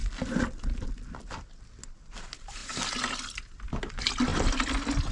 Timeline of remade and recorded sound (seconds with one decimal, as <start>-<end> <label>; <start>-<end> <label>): 0.0-4.3 recorded; 4.3-5.1 remade